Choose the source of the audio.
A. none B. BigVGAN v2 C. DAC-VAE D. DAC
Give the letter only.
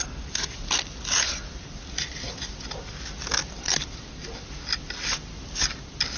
A